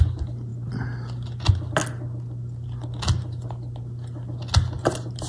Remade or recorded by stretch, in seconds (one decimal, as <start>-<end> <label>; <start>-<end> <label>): 0.0-5.3 recorded